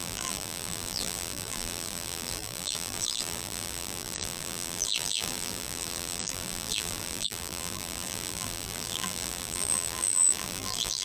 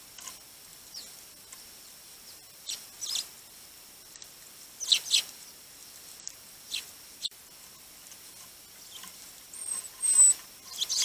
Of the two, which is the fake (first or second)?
first